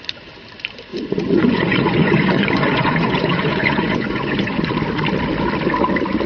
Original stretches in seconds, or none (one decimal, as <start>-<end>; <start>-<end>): 0.0-0.9; 4.7-6.3